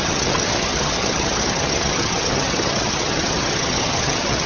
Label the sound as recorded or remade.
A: remade